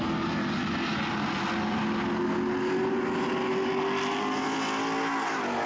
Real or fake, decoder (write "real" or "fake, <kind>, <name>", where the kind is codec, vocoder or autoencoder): real